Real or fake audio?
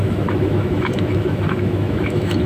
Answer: fake